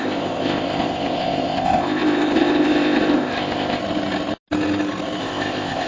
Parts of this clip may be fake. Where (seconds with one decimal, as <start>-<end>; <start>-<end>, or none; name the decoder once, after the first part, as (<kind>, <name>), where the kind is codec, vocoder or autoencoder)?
0.0-3.8 (codec, ZipCodec); 5.2-5.9